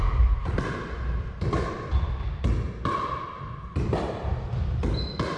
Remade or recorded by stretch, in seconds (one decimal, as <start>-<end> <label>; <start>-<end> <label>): 0.0-5.4 recorded